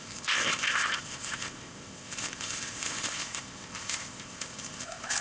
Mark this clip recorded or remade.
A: remade